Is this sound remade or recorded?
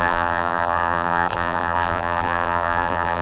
remade